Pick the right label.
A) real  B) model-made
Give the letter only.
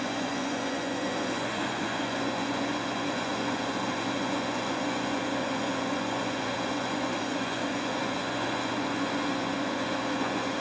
B